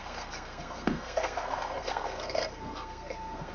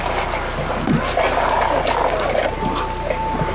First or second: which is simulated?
first